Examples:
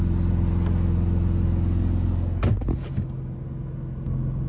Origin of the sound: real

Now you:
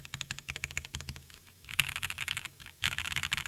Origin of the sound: fake